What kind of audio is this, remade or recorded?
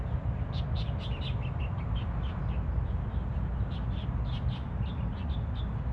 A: recorded